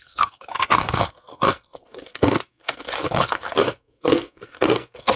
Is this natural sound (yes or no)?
no